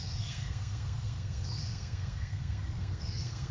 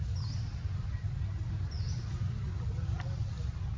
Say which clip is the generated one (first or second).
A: first